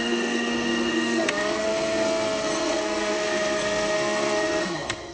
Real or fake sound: fake